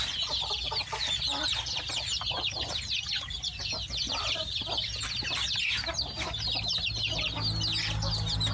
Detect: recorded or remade recorded